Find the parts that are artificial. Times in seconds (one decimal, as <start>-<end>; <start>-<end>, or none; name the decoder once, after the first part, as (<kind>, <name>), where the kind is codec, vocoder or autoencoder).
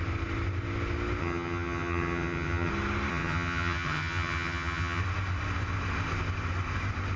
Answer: 1.2-2.7 (vocoder, HiFi-GAN); 3.1-5.0